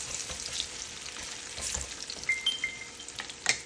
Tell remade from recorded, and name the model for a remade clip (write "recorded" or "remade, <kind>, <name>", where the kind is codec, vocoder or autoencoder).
recorded